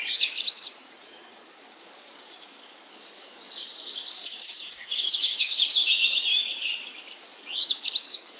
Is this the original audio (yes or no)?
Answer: no